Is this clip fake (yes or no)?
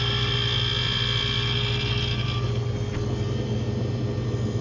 no